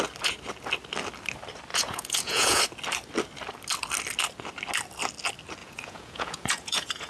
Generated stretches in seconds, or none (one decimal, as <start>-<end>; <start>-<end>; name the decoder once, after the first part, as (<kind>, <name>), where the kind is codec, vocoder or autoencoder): 1.7-2.6 (vocoder, Vocos); 5.6-7.1